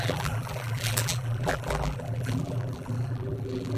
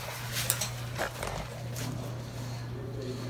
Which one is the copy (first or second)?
first